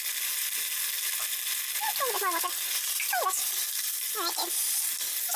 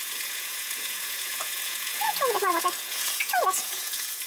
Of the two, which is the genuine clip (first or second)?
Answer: first